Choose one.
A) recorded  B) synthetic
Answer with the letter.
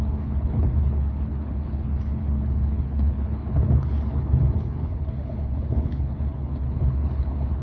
B